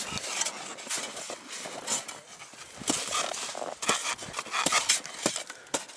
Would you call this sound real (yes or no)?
yes